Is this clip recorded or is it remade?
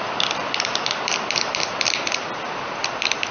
recorded